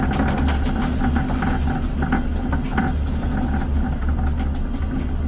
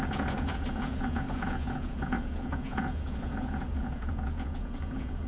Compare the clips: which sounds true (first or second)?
first